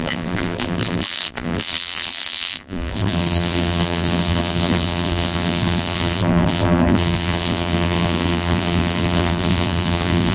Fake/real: fake